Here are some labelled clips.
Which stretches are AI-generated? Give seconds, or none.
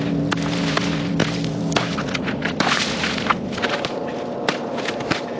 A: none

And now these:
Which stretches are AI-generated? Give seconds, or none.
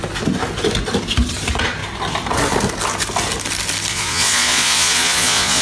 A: 3.9-5.6 (vocoder, Vocos)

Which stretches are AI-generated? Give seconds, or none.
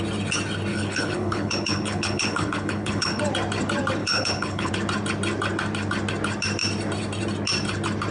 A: 0.7-3.2 (codec, HILCodec); 4.0-4.7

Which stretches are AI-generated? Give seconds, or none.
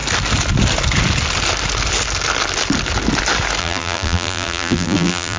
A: 3.6-5.4 (vocoder, BigVGAN v2)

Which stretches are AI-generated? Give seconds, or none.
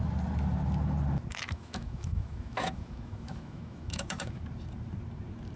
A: 1.3-4.4 (autoencoder, DAC-VAE)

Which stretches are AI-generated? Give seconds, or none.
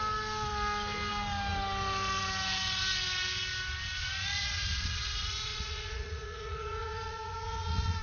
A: 4.0-8.0 (vocoder, Vocos)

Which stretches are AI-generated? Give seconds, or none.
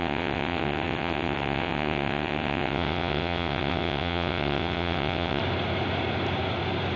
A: 0.0-5.4 (vocoder, WaveNeXt)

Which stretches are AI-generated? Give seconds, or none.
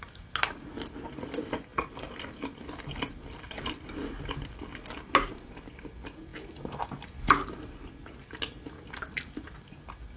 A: none